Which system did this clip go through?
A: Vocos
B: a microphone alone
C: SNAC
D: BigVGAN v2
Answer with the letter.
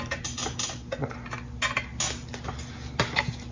B